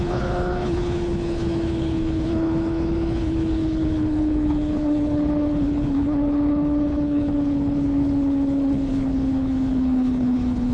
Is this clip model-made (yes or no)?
yes